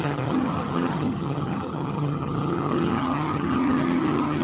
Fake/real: fake